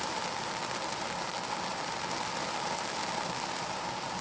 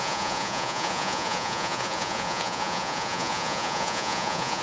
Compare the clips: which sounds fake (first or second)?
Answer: second